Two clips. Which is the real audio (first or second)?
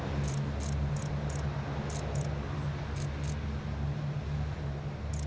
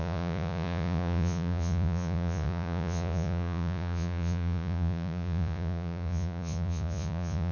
first